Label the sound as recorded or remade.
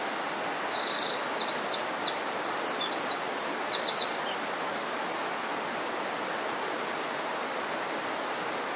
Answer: recorded